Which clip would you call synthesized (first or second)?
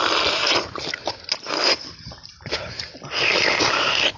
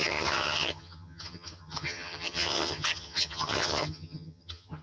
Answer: second